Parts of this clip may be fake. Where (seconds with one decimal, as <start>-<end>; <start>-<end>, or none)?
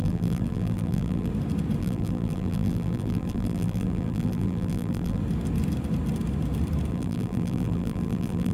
0.0-1.3; 1.8-5.2; 6.9-8.5